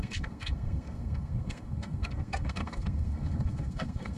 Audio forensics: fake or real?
fake